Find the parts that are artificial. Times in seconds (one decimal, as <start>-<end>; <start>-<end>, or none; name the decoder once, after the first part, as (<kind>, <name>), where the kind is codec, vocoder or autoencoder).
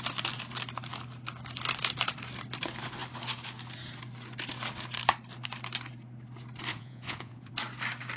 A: 6.7-7.5 (vocoder, Vocos)